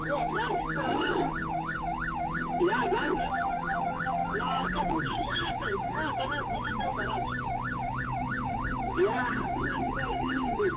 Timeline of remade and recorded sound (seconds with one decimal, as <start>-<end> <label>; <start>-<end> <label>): 0.0-10.8 remade